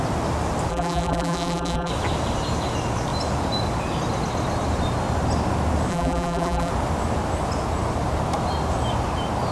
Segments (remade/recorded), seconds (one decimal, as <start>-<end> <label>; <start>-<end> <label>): 0.0-0.7 recorded; 0.7-1.9 remade; 1.9-5.9 recorded; 5.9-6.7 remade; 6.7-9.5 recorded